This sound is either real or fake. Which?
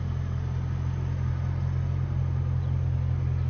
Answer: real